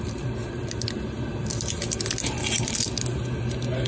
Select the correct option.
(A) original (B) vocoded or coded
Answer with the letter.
A